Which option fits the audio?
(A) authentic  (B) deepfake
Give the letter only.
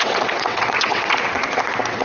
B